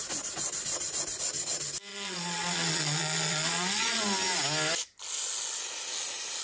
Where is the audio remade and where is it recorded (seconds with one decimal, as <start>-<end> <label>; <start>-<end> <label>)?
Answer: 0.0-1.9 recorded; 1.9-4.0 remade; 4.0-6.4 recorded